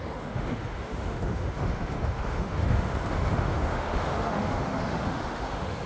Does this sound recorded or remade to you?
remade